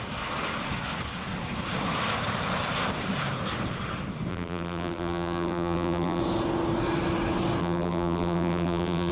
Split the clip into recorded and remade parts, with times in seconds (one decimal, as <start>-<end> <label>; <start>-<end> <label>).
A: 0.0-4.3 recorded; 4.3-6.2 remade; 6.2-7.6 recorded; 7.6-9.1 remade